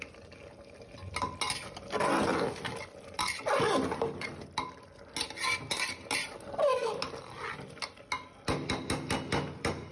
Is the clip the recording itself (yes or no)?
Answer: yes